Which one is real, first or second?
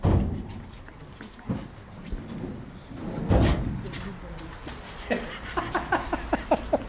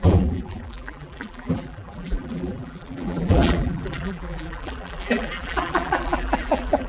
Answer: first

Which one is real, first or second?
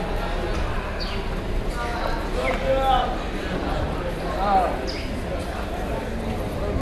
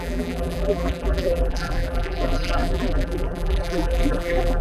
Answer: first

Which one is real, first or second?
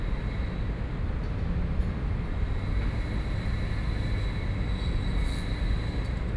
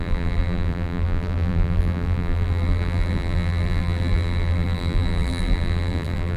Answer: first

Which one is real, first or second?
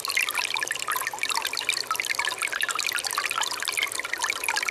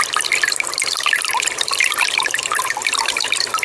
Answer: first